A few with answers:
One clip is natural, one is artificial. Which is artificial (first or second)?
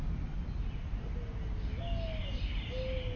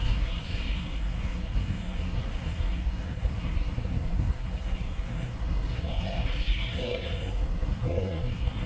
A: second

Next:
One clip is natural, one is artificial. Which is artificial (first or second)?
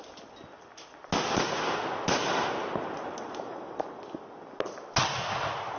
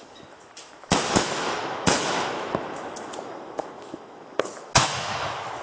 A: second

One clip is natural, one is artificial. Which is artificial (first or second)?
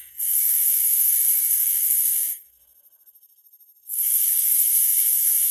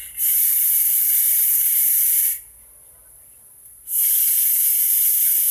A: first